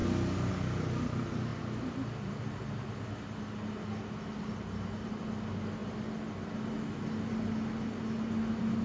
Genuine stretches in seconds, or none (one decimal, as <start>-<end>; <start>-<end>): 0.0-8.8